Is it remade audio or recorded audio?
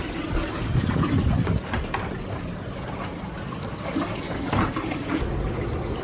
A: recorded